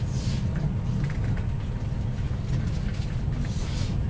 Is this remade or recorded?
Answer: recorded